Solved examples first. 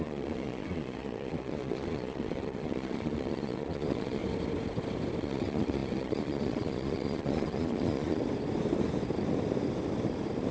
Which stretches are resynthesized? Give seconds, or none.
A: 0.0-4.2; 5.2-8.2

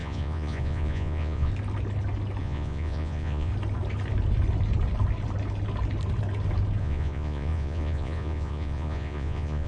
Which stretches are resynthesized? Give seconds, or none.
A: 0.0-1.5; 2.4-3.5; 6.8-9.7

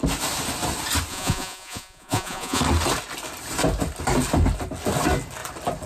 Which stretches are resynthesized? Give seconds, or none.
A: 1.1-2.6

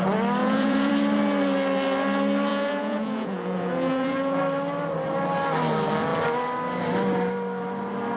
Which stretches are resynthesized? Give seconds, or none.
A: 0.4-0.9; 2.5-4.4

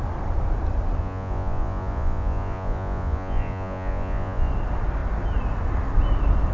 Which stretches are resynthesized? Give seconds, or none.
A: 1.0-4.5